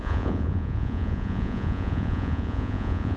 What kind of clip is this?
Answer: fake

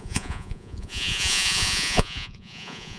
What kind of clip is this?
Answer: fake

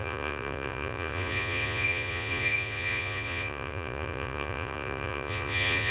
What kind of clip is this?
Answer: fake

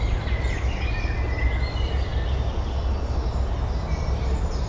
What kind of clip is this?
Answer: real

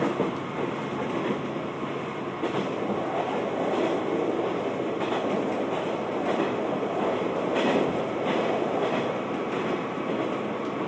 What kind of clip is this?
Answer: real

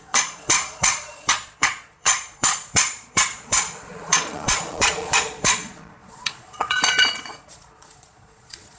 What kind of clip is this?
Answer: fake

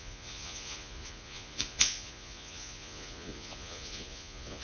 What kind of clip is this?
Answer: fake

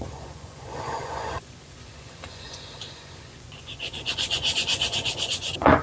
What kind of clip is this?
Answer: fake